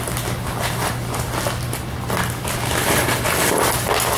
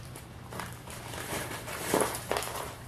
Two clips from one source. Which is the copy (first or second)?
second